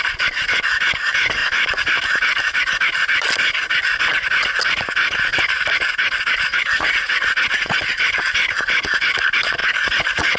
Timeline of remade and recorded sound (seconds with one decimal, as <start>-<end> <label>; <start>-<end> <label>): 0.0-6.5 recorded; 6.5-7.8 remade; 7.8-10.4 recorded